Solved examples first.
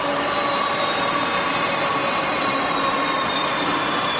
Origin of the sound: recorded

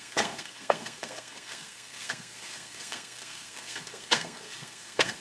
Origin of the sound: remade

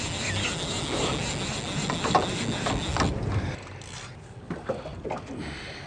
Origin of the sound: recorded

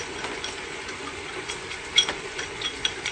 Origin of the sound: remade